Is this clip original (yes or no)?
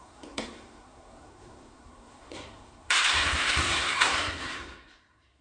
no